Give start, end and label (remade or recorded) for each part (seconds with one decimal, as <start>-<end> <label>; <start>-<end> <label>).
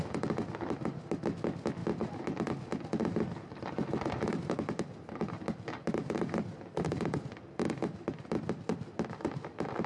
0.0-9.9 recorded